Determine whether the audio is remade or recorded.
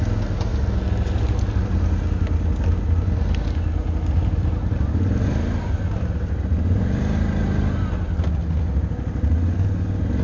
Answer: recorded